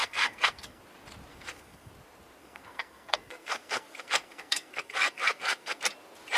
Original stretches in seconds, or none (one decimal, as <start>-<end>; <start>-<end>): 0.8-1.3; 1.9-2.4; 5.8-6.4